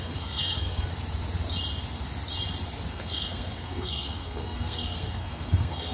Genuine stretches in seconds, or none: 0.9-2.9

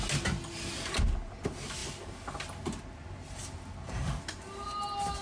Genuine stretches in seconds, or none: 0.0-5.2

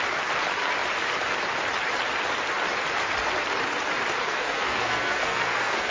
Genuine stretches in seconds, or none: 0.0-4.2